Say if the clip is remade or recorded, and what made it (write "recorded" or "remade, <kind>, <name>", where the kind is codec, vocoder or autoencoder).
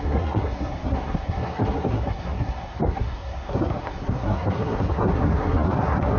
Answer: remade, codec, SNAC